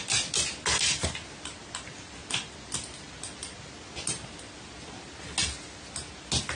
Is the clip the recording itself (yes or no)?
yes